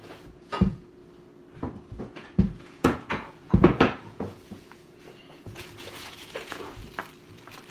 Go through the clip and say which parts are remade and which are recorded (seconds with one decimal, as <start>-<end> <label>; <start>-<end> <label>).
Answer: 0.0-1.0 remade; 1.0-2.0 recorded; 2.0-6.8 remade; 6.8-7.7 recorded